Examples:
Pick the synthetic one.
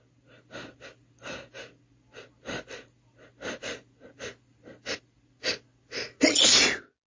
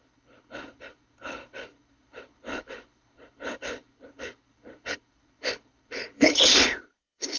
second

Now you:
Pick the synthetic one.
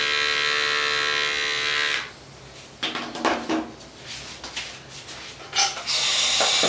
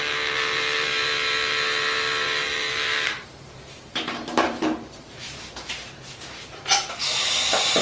second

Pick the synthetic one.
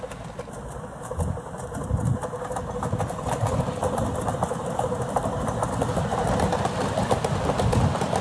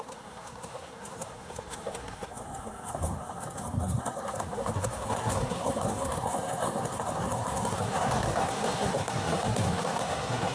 second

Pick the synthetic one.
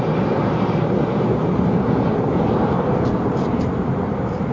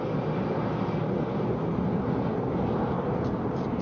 first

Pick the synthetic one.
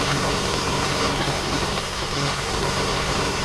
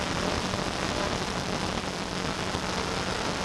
first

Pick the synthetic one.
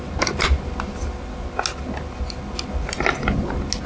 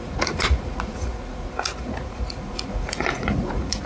second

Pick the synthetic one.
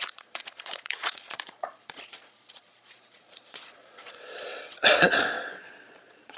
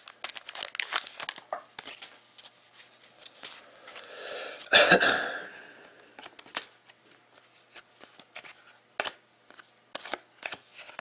first